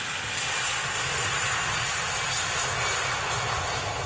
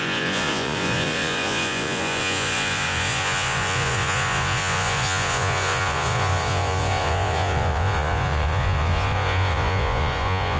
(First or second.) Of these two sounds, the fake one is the second